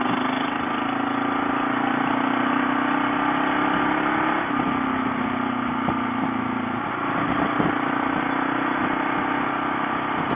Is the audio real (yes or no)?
yes